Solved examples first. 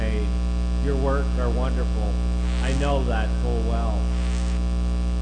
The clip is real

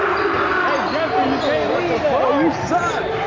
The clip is real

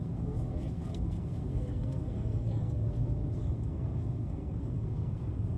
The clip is fake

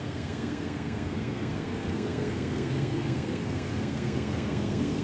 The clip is fake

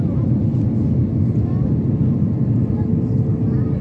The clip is real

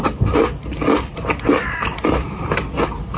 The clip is real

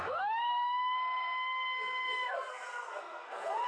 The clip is fake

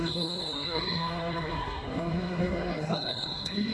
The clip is fake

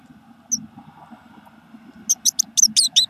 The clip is real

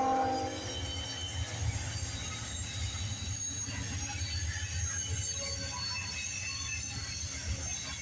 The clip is real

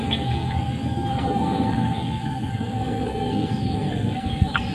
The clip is fake